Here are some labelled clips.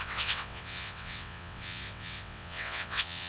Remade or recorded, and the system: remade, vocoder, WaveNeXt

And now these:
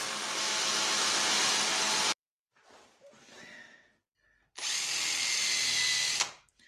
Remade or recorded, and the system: recorded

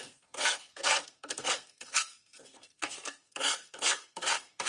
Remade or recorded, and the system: remade, codec, SNAC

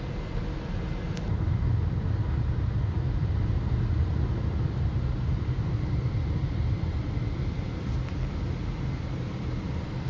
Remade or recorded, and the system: recorded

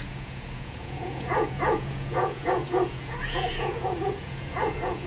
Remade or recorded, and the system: remade, vocoder, Vocos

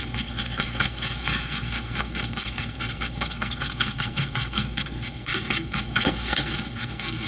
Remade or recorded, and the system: remade, codec, SNAC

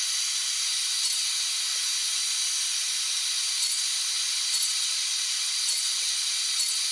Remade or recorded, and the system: recorded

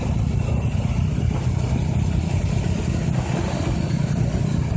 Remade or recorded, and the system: recorded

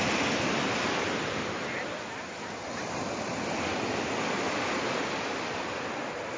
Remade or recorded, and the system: recorded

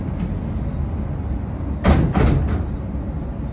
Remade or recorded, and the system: recorded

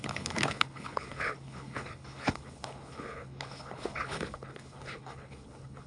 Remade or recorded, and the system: remade, codec, HILCodec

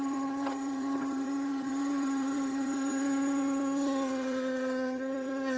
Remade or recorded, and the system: remade, vocoder, HiFi-GAN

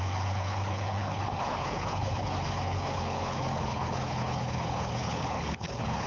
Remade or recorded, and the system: remade, codec, HILCodec